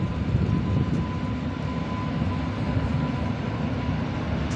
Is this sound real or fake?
real